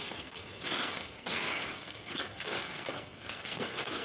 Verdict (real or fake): fake